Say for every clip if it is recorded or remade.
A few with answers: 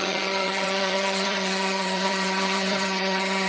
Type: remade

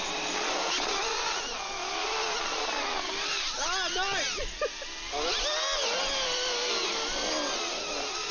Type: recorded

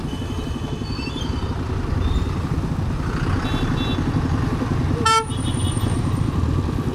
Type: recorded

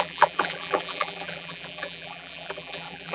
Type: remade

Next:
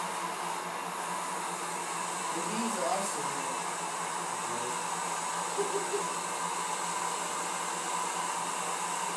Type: recorded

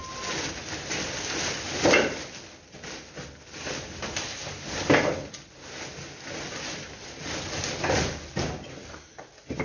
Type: recorded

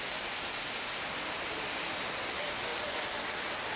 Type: recorded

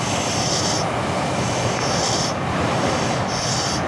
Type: recorded